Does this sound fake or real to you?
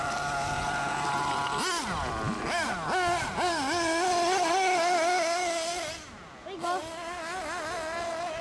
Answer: real